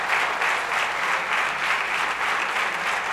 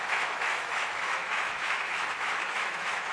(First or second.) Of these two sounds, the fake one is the second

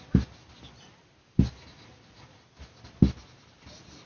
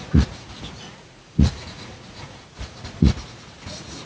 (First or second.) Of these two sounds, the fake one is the second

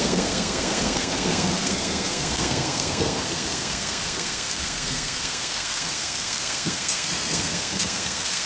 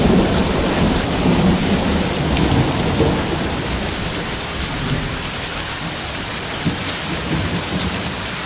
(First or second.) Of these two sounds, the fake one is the first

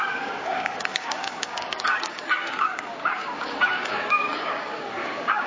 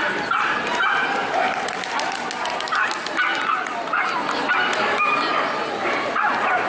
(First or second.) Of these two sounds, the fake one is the first